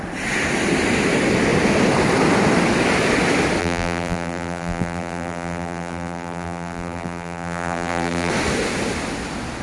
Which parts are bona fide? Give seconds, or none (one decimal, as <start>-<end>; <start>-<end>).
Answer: 0.0-3.6; 8.3-9.6